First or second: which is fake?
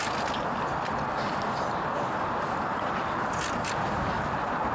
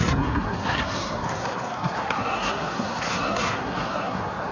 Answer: second